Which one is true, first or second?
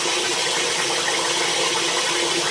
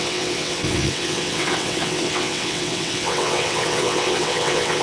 first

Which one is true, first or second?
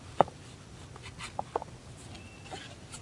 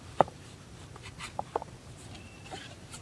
first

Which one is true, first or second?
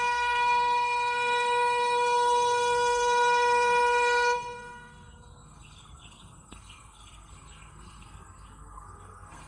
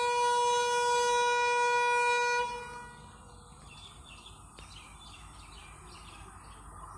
second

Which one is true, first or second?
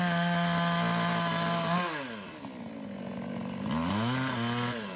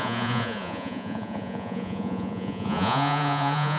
first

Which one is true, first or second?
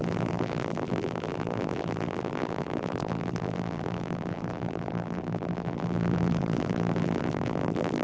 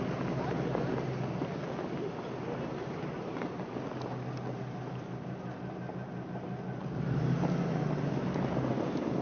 second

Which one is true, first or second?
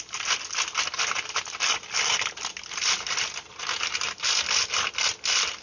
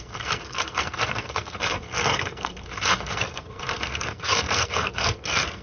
first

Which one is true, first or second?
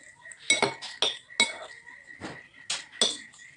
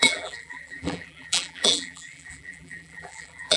first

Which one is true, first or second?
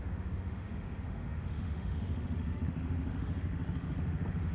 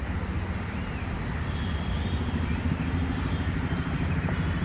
second